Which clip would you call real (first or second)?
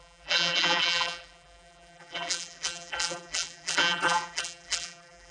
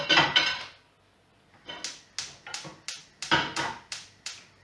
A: second